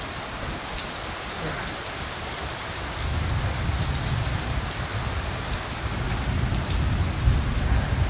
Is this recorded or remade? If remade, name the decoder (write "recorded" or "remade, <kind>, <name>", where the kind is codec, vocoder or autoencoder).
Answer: recorded